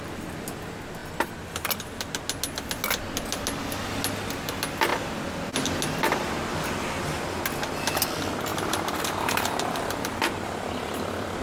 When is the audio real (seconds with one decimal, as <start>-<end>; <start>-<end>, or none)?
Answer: 0.0-8.5; 10.1-11.4